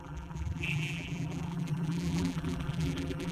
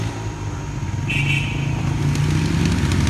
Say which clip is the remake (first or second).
first